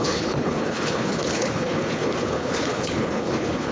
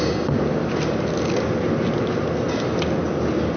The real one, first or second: second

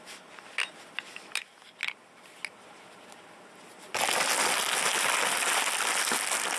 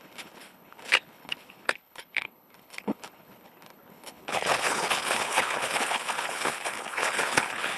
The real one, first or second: first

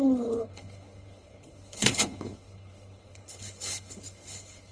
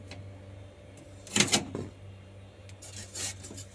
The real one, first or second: second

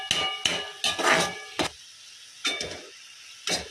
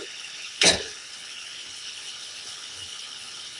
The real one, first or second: first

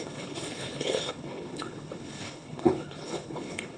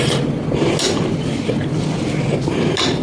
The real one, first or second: second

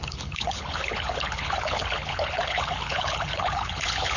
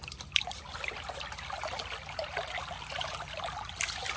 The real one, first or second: second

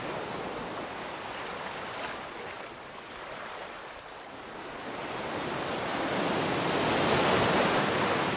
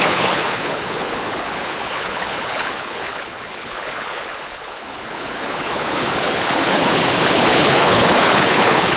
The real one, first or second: first